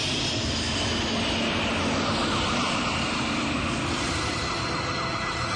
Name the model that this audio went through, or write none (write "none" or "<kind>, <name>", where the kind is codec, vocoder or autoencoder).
none